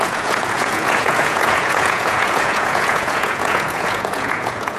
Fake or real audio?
fake